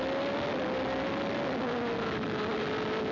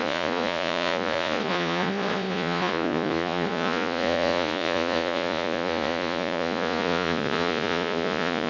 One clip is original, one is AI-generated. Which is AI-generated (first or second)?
second